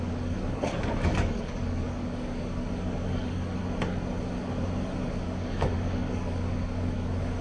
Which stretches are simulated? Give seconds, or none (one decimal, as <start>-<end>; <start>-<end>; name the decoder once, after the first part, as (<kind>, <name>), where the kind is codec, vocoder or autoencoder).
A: 0.0-3.6 (codec, DAC); 5.1-7.4